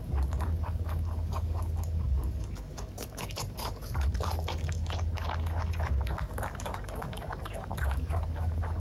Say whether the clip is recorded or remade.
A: remade